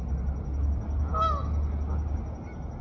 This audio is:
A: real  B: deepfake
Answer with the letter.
A